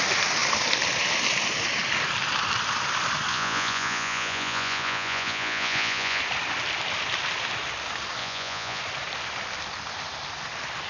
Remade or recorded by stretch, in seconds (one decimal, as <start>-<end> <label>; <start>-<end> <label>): 0.0-3.3 recorded; 3.3-6.2 remade; 6.2-8.2 recorded; 8.2-8.8 remade; 8.8-10.9 recorded

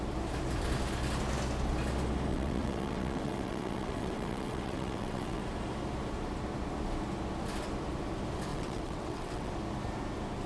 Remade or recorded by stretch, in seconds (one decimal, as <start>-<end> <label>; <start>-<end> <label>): 0.0-2.3 recorded; 2.3-5.4 remade; 5.4-8.5 recorded; 8.5-9.5 remade; 9.5-10.5 recorded

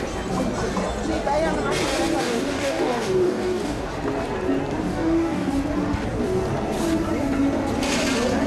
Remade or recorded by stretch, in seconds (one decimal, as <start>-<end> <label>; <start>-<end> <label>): 0.0-2.2 recorded; 2.2-3.9 remade; 3.9-4.9 recorded; 4.9-5.5 remade; 5.5-8.5 recorded

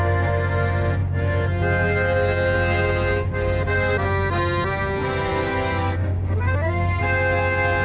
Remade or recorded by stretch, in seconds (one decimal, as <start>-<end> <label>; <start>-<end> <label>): 0.0-5.3 recorded; 5.3-7.0 remade; 7.0-7.8 recorded

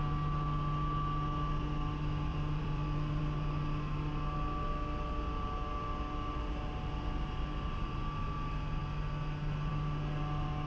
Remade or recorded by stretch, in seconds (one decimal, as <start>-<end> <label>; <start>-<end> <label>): 0.0-2.3 recorded; 2.3-3.2 remade; 3.2-10.7 recorded